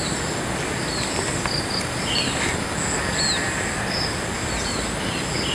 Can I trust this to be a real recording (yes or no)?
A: yes